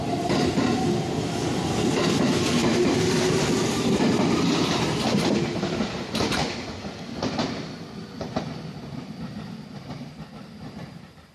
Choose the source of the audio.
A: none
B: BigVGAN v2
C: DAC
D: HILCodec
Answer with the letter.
B